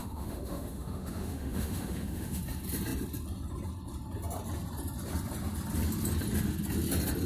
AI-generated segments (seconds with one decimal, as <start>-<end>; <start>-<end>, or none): 0.0-2.4